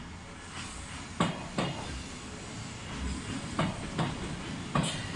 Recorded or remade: recorded